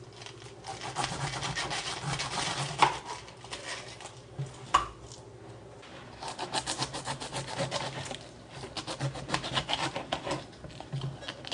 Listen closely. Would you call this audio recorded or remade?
recorded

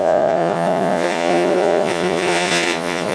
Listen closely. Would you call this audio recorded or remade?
remade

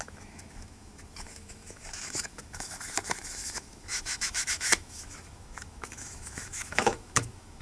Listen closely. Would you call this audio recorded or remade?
remade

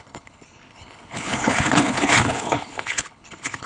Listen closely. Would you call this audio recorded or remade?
remade